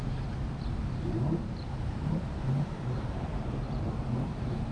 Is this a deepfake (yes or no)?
yes